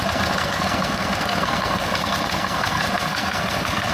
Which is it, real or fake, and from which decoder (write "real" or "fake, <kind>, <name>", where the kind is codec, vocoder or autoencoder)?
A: fake, codec, SNAC